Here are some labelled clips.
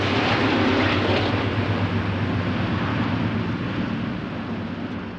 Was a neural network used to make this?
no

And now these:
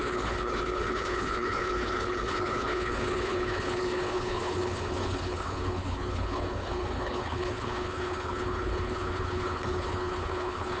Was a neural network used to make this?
yes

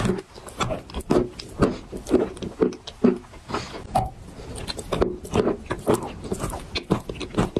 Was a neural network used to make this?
no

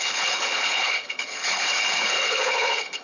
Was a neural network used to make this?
yes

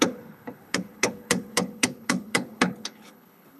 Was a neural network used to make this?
yes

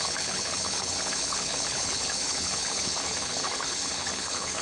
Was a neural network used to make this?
yes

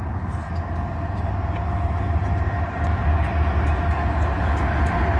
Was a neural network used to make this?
no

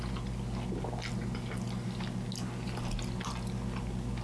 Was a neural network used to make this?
no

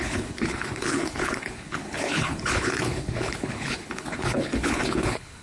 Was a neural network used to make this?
yes